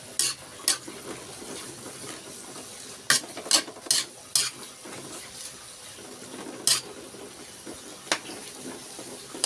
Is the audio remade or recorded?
recorded